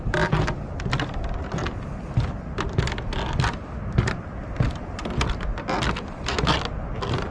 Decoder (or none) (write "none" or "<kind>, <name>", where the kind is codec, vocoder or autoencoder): none